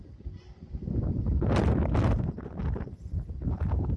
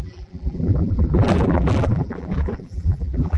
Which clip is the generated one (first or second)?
second